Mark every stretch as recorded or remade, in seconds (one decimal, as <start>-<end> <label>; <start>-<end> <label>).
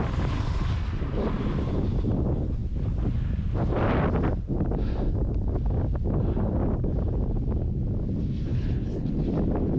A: 0.0-8.5 recorded; 8.5-9.2 remade; 9.2-9.8 recorded